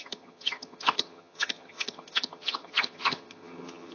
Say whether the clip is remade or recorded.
remade